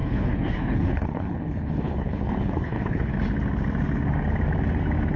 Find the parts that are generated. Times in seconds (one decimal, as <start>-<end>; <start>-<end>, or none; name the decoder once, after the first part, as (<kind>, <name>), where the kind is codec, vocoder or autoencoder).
0.0-3.1 (codec, HILCodec)